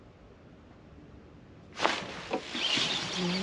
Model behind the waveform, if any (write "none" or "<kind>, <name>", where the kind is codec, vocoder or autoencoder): none